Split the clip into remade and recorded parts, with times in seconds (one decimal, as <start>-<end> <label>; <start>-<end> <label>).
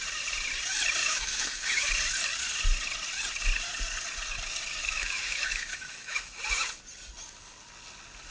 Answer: 0.0-1.0 recorded; 1.0-1.9 remade; 1.9-4.8 recorded; 4.8-6.4 remade; 6.4-8.3 recorded